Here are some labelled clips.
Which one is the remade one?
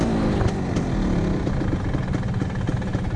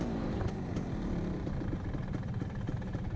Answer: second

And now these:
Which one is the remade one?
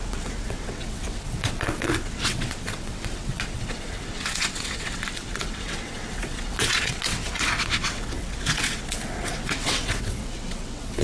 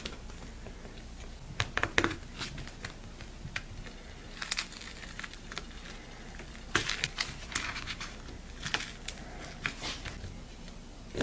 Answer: first